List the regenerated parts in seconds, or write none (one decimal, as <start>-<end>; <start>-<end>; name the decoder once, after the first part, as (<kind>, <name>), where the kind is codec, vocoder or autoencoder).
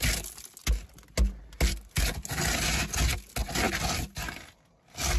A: none